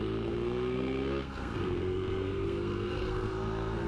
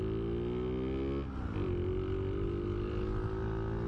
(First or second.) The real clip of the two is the second